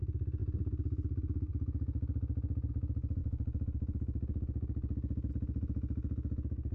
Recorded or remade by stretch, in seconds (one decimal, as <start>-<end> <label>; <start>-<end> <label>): 0.0-6.7 recorded